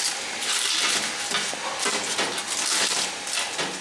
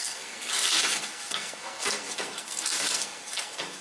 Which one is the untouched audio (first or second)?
first